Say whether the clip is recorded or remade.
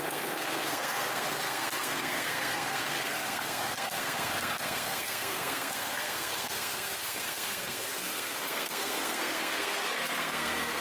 remade